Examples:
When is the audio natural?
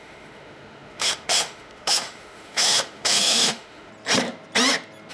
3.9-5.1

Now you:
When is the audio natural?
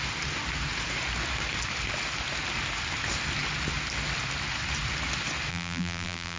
0.0-5.5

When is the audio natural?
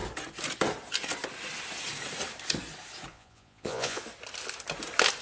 0.0-3.1; 4.0-5.2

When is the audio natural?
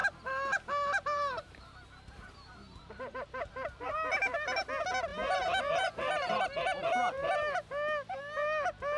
2.3-5.1; 5.7-9.0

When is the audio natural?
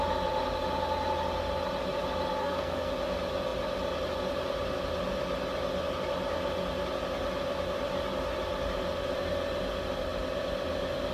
0.0-2.4; 2.9-11.1